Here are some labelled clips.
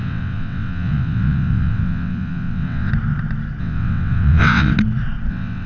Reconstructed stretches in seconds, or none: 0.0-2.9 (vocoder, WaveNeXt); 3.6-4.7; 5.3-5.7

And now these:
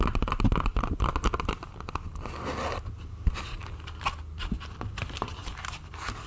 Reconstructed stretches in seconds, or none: none

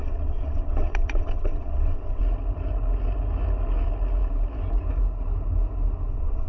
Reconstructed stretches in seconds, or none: 0.0-2.2 (vocoder, WaveNeXt); 6.1-6.5